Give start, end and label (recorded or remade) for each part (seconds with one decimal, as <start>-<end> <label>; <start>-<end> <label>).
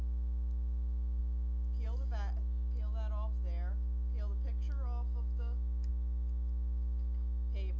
0.0-7.8 recorded